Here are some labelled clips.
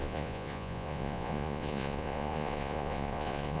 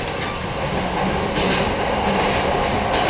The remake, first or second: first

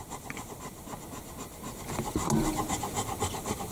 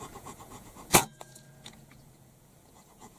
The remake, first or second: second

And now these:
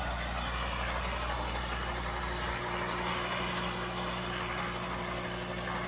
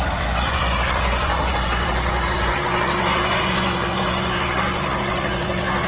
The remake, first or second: second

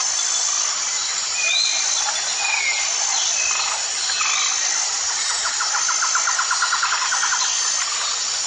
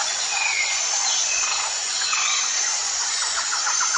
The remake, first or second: second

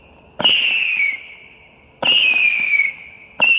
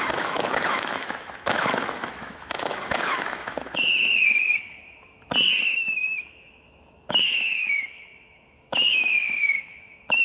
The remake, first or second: second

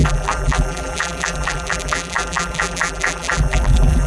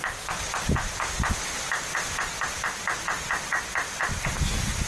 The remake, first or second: first